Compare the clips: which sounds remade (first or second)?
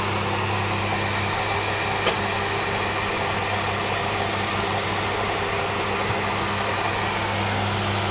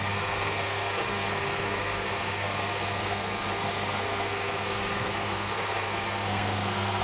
second